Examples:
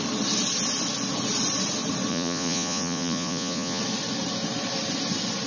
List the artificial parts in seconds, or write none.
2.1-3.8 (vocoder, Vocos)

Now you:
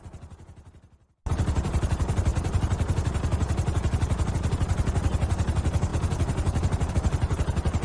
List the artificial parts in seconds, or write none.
none